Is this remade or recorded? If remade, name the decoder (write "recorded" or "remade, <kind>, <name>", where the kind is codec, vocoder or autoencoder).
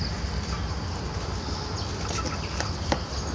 recorded